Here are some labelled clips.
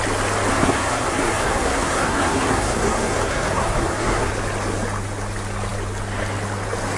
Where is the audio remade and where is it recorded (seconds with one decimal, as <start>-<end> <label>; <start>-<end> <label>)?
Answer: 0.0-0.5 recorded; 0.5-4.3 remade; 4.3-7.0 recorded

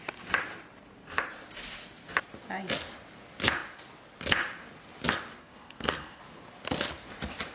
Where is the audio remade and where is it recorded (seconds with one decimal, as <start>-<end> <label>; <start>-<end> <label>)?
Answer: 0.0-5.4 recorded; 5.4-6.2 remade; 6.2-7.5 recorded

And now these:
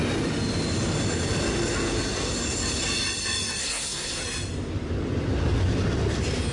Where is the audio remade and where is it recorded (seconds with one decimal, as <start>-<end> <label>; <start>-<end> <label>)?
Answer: 0.0-3.6 recorded; 3.6-4.2 remade; 4.2-6.5 recorded